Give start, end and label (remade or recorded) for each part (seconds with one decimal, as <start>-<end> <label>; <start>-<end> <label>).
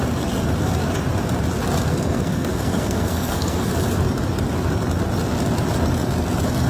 0.0-1.9 recorded; 1.9-3.7 remade; 3.7-6.7 recorded